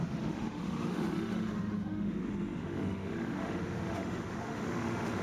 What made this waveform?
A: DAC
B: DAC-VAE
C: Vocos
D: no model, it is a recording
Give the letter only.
B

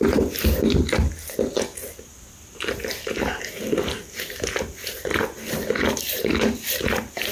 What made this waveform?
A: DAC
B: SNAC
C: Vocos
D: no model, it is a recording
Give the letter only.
D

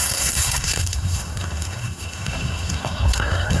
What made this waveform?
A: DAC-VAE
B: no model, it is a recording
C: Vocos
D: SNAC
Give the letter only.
D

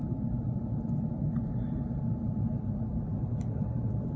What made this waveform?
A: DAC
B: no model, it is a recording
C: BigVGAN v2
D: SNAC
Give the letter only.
C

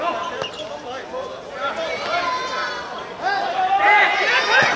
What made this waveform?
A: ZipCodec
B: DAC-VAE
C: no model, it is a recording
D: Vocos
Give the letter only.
C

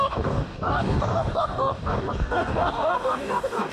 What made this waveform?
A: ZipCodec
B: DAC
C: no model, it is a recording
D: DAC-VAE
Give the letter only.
B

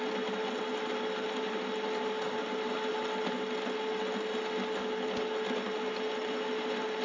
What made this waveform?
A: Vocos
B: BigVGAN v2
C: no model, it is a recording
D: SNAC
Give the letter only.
C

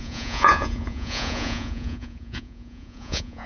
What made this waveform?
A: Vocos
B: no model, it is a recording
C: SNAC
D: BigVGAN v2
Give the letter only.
A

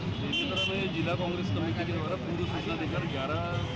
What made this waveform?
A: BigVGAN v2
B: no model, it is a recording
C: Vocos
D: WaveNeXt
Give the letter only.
B